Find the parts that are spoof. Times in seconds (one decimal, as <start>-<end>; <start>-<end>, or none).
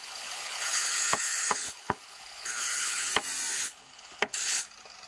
0.0-3.1; 3.5-4.6